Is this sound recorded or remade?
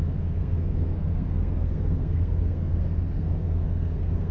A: remade